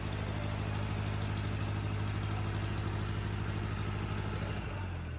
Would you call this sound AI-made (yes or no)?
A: no